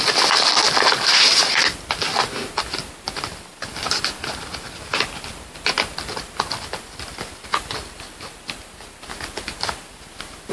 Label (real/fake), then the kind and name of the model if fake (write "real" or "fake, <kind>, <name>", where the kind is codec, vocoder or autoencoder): real